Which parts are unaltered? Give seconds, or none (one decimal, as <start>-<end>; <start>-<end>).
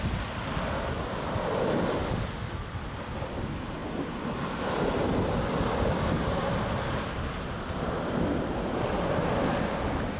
0.0-10.2